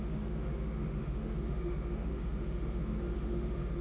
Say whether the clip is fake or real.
fake